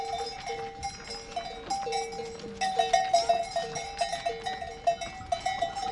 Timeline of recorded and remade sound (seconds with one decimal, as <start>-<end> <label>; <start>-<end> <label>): 0.0-5.9 recorded